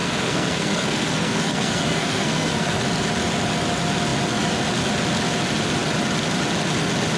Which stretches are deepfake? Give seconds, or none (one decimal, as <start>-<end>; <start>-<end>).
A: 0.0-2.8